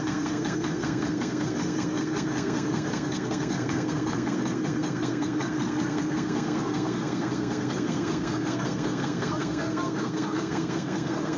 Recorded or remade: remade